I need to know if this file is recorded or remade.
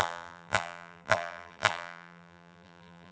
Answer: remade